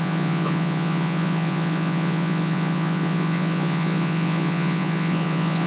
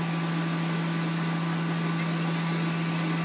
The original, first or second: second